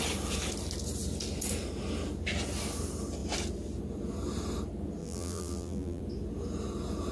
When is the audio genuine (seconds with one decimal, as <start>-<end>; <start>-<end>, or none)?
0.0-5.0; 6.0-7.1